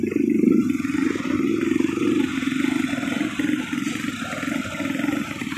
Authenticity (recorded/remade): recorded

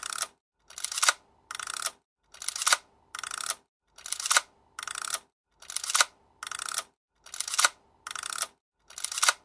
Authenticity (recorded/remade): recorded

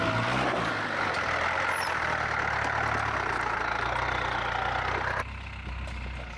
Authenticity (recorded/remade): recorded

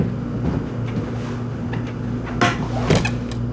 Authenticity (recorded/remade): recorded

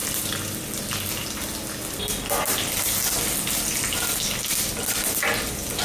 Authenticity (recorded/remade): recorded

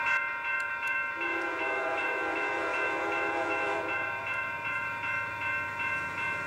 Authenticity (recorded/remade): remade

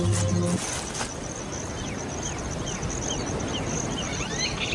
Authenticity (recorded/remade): recorded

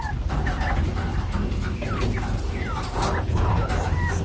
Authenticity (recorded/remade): recorded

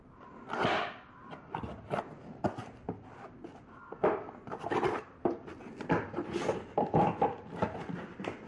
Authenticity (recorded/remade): recorded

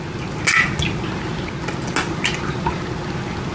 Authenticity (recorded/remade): recorded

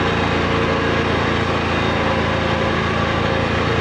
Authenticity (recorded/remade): recorded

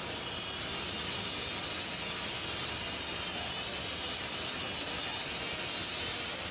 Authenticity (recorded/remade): recorded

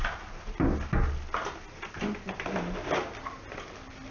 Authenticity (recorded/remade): recorded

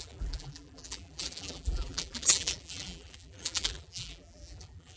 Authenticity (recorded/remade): remade